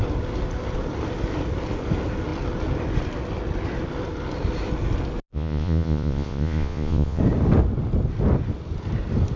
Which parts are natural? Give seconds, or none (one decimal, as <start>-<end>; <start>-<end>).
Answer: 0.0-5.3; 7.2-9.4